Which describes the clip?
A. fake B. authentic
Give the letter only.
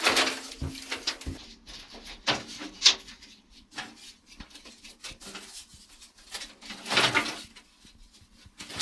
B